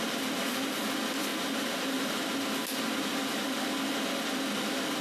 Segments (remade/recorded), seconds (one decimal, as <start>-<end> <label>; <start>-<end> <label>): 0.0-5.0 recorded